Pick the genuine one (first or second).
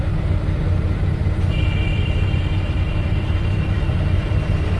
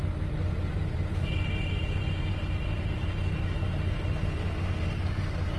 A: second